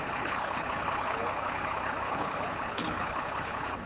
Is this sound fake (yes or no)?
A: yes